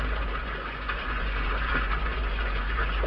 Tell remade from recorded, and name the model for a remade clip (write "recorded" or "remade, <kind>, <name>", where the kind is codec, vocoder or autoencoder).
remade, vocoder, Vocos